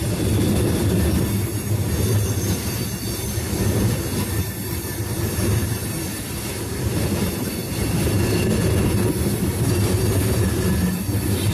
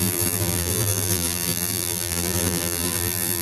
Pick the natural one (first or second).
first